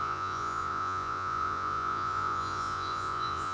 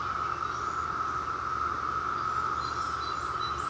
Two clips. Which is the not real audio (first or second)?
first